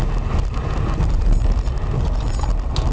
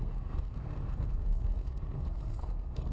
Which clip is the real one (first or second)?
first